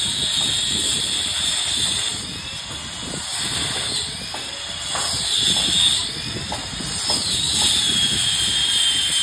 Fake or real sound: real